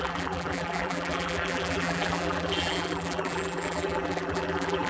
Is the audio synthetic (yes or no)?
yes